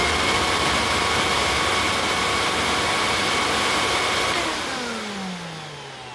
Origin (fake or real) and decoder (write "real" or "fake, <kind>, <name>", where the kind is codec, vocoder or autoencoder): real